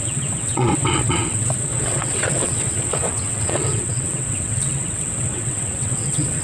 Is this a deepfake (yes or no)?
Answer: yes